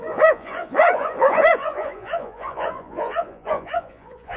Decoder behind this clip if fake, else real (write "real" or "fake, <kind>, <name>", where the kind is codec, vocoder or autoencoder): fake, vocoder, Vocos